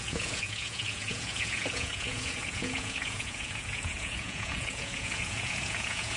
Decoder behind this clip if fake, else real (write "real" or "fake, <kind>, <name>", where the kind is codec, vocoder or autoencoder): fake, vocoder, Vocos